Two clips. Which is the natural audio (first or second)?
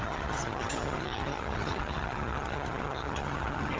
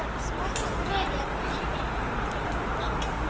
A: second